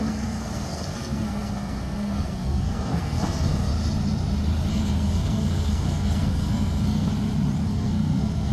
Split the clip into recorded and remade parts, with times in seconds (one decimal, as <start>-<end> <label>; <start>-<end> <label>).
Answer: 0.0-3.7 remade; 3.7-4.7 recorded; 4.7-7.1 remade; 7.1-7.6 recorded; 7.6-8.5 remade